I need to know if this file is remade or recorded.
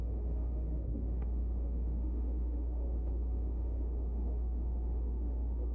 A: remade